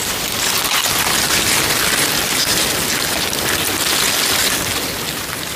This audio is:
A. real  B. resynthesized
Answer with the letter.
A